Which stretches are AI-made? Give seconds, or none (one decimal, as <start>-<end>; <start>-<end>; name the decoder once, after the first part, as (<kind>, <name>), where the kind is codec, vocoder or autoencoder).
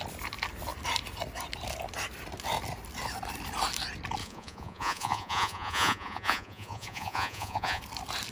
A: 4.2-7.8 (vocoder, Vocos)